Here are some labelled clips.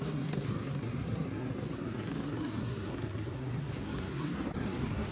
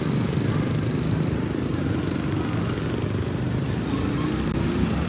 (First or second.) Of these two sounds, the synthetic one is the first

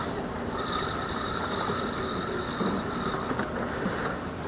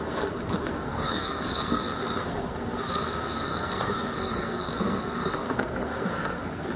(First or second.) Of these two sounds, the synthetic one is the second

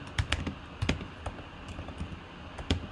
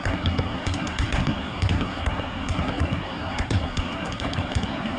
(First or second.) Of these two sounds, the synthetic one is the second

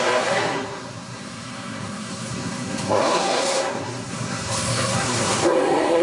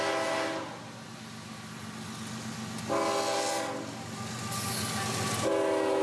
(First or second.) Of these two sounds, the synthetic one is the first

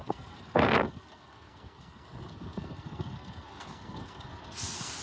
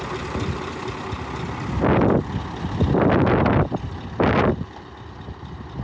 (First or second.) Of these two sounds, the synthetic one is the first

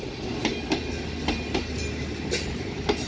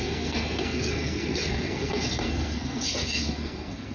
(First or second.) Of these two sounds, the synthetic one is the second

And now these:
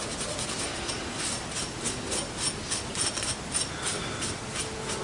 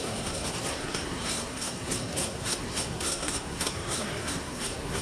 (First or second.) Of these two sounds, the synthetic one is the second